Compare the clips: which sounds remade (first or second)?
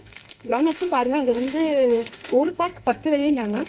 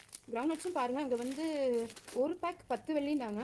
first